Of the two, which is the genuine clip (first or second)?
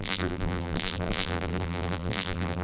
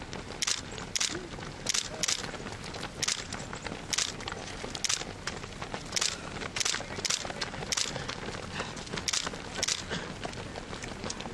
second